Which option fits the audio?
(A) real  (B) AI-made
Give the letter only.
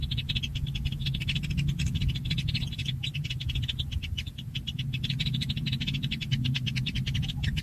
A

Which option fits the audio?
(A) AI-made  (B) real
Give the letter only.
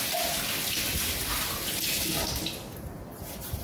B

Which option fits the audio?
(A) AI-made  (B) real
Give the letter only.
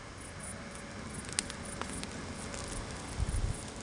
B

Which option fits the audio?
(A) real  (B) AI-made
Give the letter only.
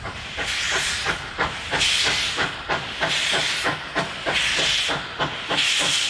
A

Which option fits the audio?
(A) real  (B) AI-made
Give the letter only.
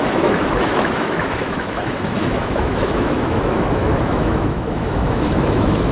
B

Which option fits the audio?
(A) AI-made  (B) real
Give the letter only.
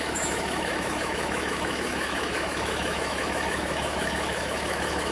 A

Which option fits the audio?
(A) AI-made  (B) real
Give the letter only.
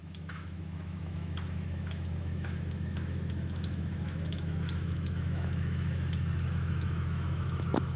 A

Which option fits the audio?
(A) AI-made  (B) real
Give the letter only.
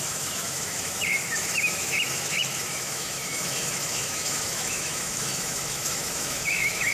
A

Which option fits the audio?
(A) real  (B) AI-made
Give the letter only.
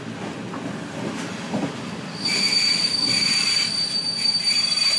A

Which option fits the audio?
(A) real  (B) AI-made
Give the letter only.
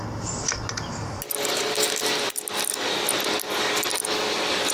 A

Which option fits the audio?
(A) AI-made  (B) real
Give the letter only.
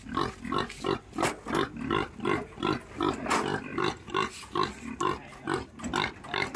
B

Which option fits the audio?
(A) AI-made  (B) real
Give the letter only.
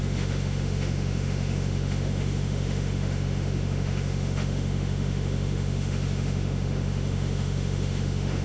A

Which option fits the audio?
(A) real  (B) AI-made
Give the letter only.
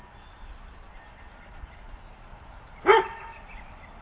A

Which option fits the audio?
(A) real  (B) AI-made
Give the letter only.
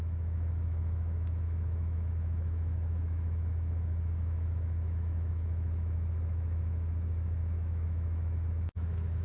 B